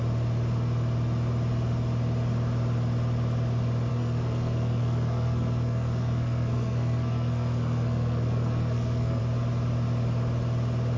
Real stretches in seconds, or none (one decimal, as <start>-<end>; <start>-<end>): 0.0-3.9; 9.2-11.0

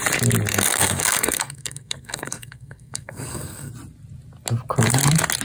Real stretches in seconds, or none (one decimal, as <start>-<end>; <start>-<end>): 0.0-0.5; 3.7-5.4

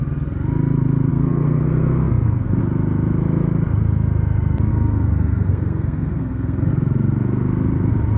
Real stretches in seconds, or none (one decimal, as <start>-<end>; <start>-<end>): 0.0-1.1; 2.6-4.7; 6.7-8.2

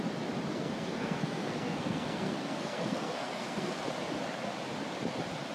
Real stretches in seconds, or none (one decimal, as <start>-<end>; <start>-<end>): 0.0-0.5; 3.8-5.5